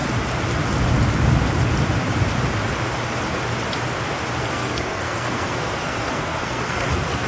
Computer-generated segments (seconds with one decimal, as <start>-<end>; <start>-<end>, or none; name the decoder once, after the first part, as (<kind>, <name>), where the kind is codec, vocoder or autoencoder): 4.4-7.3 (codec, SNAC)